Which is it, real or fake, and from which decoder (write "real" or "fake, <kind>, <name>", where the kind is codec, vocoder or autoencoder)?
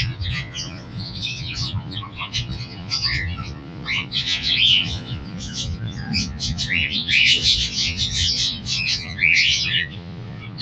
fake, vocoder, Vocos